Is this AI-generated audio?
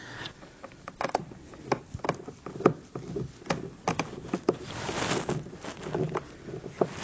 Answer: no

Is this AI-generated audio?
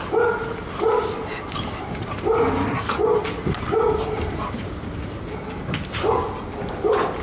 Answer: no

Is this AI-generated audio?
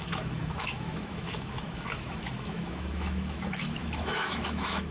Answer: yes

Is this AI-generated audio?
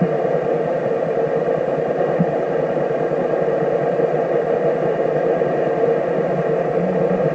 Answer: yes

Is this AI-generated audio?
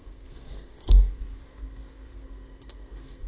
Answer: yes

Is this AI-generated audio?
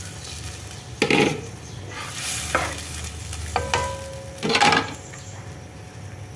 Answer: no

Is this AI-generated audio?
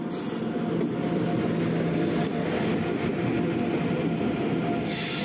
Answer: no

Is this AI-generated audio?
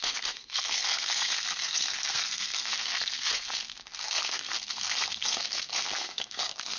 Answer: yes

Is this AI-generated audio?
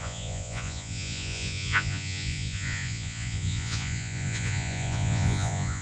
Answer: yes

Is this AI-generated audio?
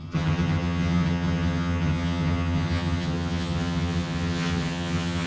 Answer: yes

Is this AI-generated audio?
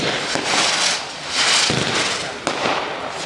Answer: no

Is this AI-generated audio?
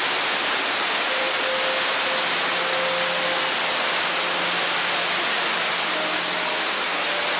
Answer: no